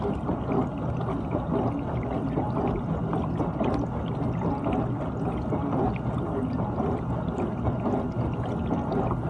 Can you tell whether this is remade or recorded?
recorded